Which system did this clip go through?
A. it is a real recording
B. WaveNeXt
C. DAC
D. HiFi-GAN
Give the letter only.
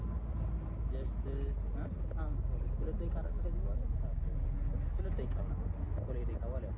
A